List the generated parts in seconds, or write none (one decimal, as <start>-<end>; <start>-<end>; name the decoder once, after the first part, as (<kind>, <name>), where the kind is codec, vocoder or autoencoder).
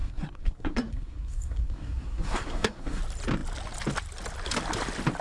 0.0-3.0 (codec, SNAC)